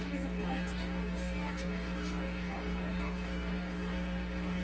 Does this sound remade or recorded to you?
remade